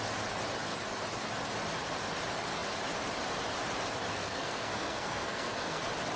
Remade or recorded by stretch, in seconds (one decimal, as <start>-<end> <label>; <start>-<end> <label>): 0.0-4.1 recorded; 4.1-5.8 remade; 5.8-6.2 recorded